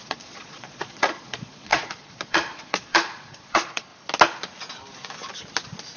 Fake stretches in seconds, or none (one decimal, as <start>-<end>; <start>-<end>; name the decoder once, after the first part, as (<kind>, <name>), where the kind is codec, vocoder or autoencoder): 0.0-3.9 (vocoder, Vocos)